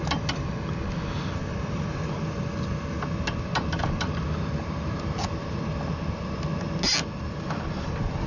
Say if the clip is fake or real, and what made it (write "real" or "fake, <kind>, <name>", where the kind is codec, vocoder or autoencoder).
real